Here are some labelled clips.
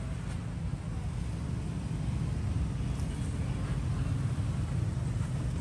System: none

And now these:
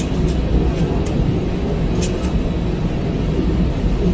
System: none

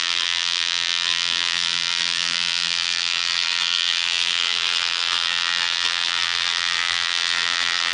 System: vocoder, BigVGAN v2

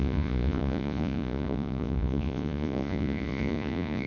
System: vocoder, Vocos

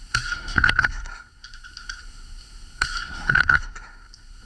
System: codec, SNAC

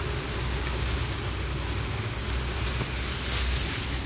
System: none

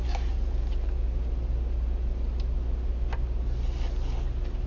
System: none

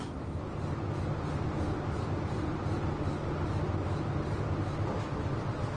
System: none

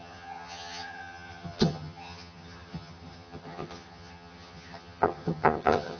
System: vocoder, HiFi-GAN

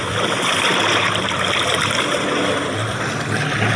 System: none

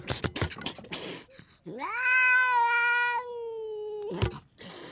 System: none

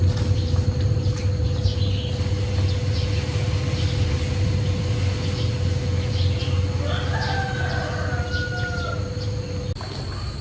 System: none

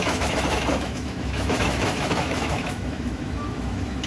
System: autoencoder, DAC-VAE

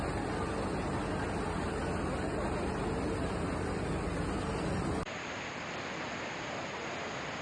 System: none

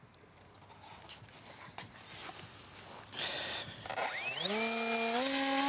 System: none